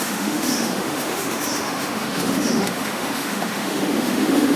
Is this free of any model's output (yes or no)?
no